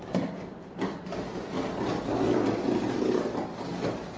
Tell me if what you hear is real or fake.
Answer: real